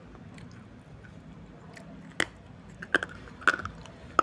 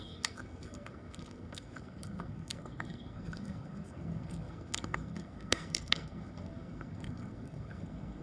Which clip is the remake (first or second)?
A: second